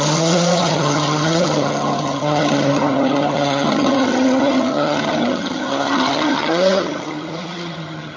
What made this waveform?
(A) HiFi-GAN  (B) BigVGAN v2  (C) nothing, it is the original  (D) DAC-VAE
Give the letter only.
A